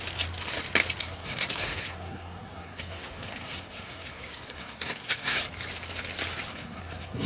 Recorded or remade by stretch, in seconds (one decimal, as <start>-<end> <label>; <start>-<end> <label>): 0.0-1.0 recorded; 1.0-5.4 remade; 5.4-6.5 recorded; 6.5-7.3 remade